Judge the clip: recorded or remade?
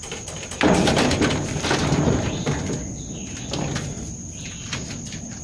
recorded